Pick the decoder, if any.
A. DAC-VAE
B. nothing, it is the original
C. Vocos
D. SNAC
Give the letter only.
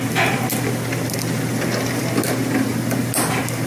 B